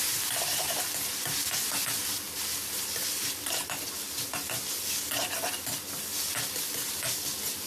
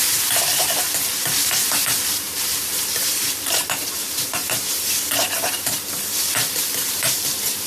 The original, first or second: first